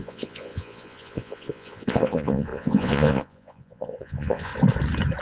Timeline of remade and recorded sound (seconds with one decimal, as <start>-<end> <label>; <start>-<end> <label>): 0.0-4.5 remade; 4.5-5.2 recorded